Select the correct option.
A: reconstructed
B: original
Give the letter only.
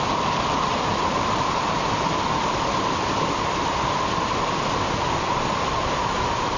B